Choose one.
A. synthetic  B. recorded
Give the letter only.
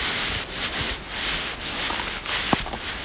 B